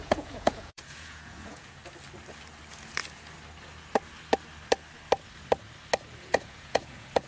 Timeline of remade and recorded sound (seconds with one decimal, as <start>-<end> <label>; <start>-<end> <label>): 0.0-1.8 remade; 1.8-6.2 recorded; 6.2-7.3 remade